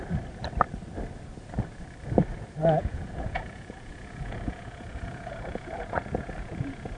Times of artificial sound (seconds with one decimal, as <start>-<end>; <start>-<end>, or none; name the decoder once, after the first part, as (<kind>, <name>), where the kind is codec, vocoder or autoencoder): 2.6-7.0 (vocoder, Vocos)